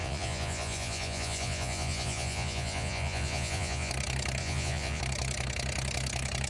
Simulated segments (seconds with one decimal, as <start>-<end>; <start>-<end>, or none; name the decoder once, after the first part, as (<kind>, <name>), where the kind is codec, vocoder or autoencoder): 0.0-3.9 (vocoder, Vocos); 4.4-5.0